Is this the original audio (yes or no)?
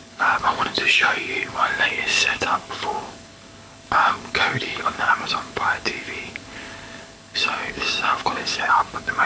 no